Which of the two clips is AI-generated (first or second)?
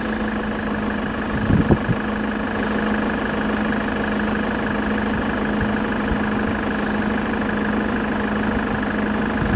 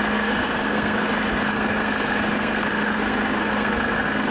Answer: second